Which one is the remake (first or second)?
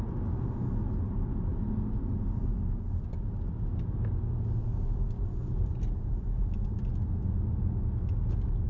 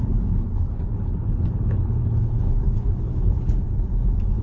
second